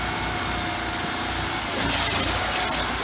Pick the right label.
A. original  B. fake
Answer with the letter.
A